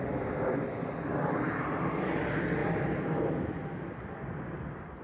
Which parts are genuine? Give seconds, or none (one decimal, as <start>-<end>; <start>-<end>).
0.0-2.6; 3.3-5.0